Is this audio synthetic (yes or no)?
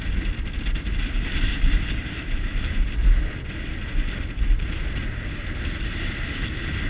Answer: no